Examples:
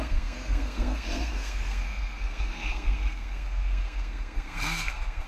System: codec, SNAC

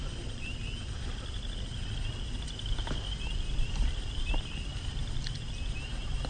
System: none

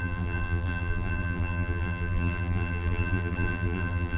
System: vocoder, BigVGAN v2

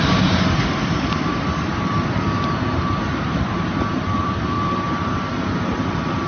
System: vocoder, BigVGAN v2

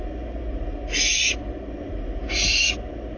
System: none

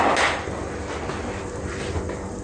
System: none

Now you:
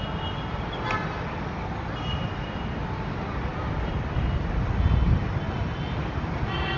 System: none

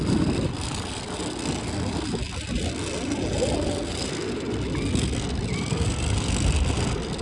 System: none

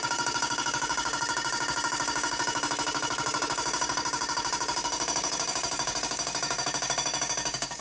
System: codec, DAC